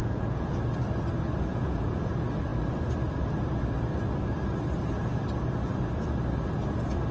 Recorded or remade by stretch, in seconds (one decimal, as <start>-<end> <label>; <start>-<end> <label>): 0.0-0.6 remade; 0.6-1.5 recorded; 1.5-2.1 remade; 2.1-7.1 recorded